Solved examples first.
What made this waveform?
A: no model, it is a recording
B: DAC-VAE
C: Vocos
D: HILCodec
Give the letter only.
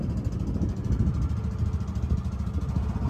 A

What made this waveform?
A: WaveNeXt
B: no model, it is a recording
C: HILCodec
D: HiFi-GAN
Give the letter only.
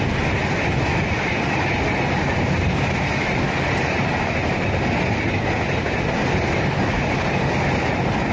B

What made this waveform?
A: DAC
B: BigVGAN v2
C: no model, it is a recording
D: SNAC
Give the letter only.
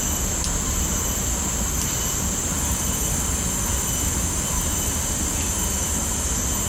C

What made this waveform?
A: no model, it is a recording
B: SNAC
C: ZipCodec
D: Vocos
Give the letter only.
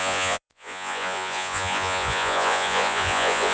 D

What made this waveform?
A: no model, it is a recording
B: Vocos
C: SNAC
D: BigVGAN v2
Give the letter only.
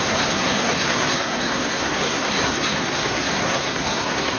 C